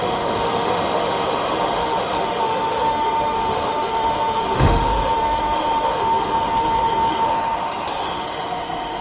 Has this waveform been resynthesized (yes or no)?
yes